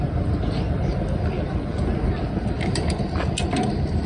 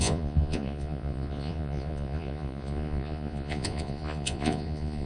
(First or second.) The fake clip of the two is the second